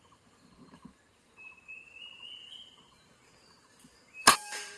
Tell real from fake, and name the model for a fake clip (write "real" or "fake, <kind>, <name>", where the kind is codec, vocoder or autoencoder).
fake, vocoder, BigVGAN v2